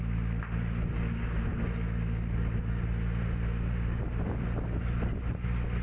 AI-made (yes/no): no